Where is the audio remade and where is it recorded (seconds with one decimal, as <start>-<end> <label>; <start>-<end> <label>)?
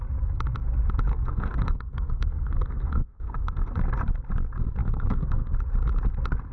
0.0-1.1 recorded; 1.1-3.7 remade; 3.7-4.8 recorded; 4.8-5.5 remade; 5.5-6.5 recorded